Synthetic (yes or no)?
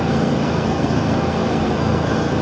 yes